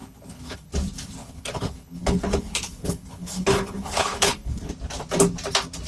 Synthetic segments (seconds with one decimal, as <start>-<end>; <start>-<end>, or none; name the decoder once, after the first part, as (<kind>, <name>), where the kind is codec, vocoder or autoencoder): 0.0-0.7 (codec, HILCodec); 1.2-4.7